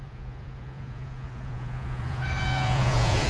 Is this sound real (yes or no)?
no